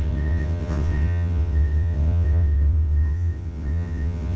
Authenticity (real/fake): fake